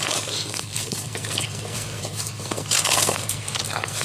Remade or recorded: remade